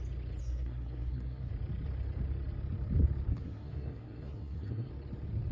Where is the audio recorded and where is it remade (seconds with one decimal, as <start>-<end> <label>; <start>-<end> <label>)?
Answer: 0.0-0.4 recorded; 0.4-1.5 remade; 1.5-3.3 recorded; 3.3-4.9 remade; 4.9-5.5 recorded